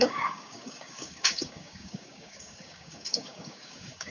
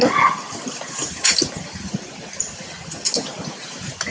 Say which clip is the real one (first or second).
second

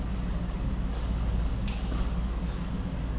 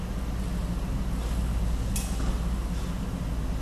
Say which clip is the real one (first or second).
second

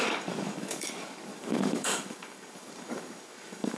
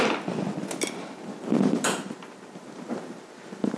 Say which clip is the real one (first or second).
second